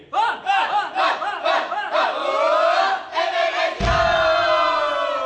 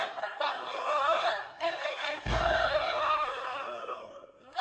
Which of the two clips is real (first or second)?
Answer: first